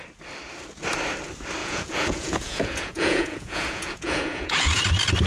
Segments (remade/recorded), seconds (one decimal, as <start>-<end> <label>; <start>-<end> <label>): 0.0-1.6 recorded; 1.6-4.8 remade; 4.8-5.3 recorded